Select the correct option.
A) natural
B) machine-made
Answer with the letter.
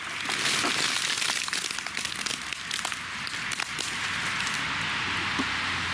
A